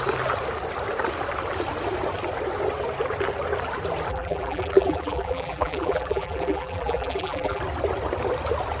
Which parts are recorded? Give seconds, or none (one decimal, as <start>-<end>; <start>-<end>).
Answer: 0.0-4.1; 7.6-8.8

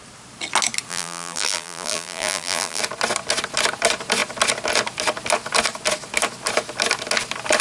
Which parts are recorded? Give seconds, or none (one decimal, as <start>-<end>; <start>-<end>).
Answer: 0.0-0.9; 2.8-7.6

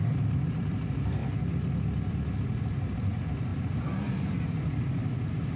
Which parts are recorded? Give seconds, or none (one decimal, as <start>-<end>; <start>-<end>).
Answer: 1.2-2.1; 3.5-4.1

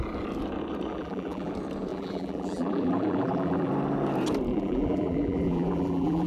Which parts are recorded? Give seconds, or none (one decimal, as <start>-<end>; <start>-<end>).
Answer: 0.0-0.9; 1.5-1.9; 3.7-4.5